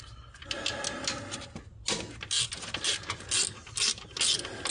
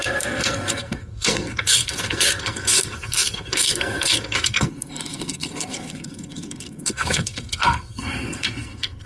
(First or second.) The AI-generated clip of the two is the second